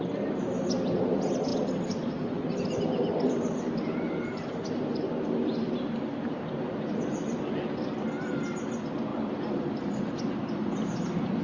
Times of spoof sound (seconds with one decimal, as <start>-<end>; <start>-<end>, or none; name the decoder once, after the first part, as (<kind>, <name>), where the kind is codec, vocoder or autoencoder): 9.1-10.1 (vocoder, BigVGAN v2)